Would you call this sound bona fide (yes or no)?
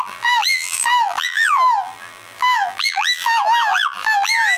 no